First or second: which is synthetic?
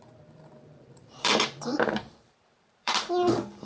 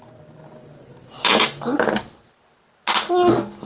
first